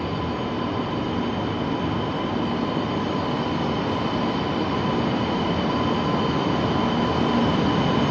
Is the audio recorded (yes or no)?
yes